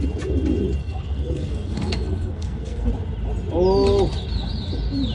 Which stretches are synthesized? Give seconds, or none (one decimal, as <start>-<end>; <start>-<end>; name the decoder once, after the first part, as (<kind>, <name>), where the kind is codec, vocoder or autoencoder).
0.8-2.9 (codec, SNAC)